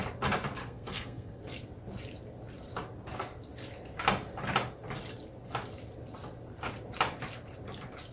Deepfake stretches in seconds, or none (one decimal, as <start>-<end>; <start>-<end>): 0.6-1.4